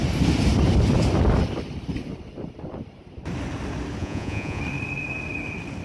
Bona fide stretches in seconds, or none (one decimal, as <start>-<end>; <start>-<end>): 0.0-4.0; 4.6-5.8